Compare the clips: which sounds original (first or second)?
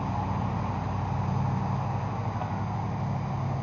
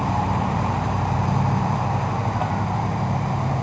first